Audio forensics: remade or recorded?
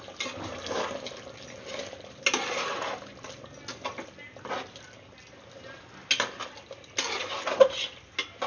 recorded